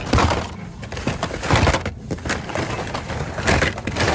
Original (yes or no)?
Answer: yes